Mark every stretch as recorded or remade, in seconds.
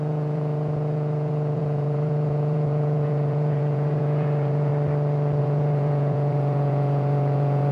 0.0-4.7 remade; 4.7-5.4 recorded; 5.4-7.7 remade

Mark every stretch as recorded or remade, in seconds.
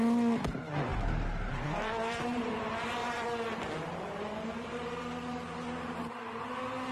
0.0-0.9 recorded; 0.9-2.5 remade; 2.5-3.0 recorded; 3.0-5.0 remade; 5.0-6.9 recorded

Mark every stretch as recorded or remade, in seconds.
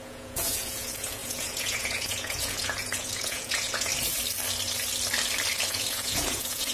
0.0-3.9 remade; 3.9-5.7 recorded; 5.7-6.7 remade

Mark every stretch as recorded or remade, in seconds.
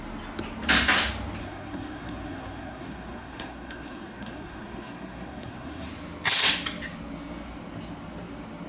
0.0-1.4 recorded; 1.4-5.9 remade; 5.9-8.7 recorded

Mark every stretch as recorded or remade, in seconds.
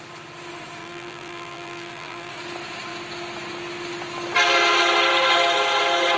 0.0-0.8 recorded; 0.8-2.3 remade; 2.3-6.2 recorded